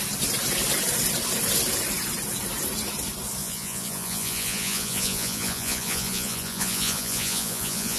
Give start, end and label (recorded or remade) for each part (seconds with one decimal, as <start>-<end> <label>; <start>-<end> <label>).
0.0-3.4 recorded; 3.4-8.0 remade